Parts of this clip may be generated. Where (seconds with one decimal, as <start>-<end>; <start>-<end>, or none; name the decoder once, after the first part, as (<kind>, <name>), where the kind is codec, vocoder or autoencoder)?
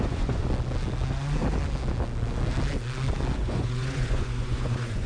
0.0-0.4 (vocoder, Vocos); 3.4-5.1